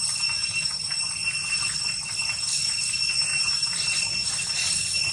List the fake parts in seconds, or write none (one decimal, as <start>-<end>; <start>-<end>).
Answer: none